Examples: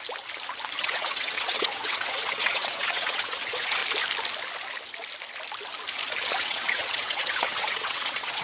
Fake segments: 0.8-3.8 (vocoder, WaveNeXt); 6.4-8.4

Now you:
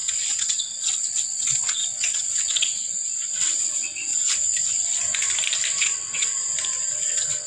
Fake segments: 0.0-2.8 (vocoder, WaveNeXt); 3.4-4.1; 5.8-6.3; 6.9-7.5

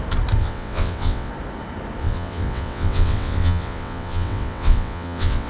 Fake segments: 0.4-1.3 (vocoder, WaveNeXt); 2.0-5.5

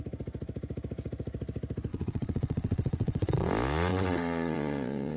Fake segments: 1.9-3.5 (vocoder, WaveNeXt); 3.9-5.2

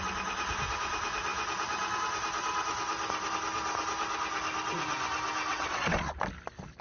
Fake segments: 5.5-6.2 (vocoder, WaveNeXt)

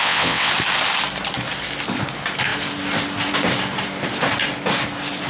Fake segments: 0.0-0.5 (vocoder, WaveNeXt)

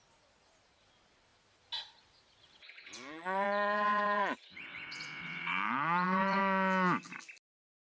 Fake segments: 2.4-6.4 (vocoder, WaveNeXt)

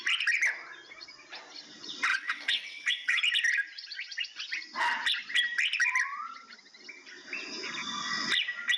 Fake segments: 2.1-3.2 (vocoder, WaveNeXt)